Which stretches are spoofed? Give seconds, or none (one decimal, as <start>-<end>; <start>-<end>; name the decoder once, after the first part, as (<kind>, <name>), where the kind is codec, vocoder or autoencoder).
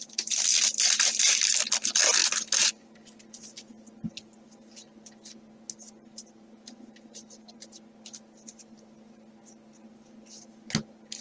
none